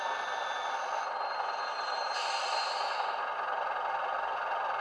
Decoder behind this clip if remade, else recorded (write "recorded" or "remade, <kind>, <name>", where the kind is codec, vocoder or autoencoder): recorded